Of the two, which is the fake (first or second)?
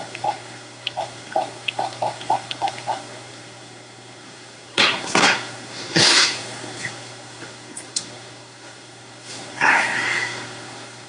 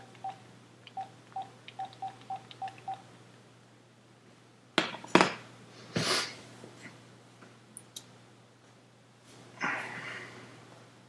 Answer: first